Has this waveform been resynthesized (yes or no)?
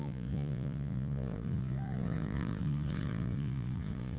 yes